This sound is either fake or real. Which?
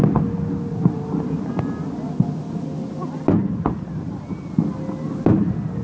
real